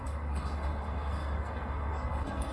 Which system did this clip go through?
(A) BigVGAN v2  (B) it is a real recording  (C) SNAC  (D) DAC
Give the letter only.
C